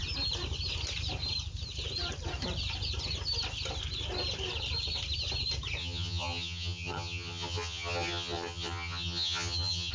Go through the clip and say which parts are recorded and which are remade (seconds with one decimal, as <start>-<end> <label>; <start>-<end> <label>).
0.0-5.8 recorded; 5.8-9.9 remade